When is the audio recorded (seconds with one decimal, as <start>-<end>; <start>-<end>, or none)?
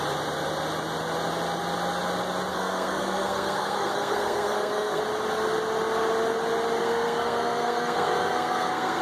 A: 0.0-2.5; 5.0-6.8